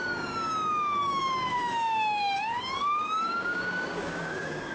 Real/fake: fake